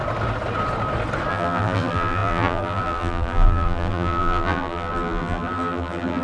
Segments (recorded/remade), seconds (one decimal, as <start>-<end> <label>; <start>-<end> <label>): 0.0-1.3 recorded; 1.3-6.2 remade